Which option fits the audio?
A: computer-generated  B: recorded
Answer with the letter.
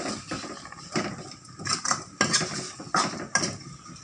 B